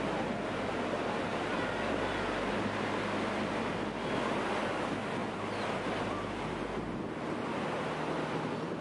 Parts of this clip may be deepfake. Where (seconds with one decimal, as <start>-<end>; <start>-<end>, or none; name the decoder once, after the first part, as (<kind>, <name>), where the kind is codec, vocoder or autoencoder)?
none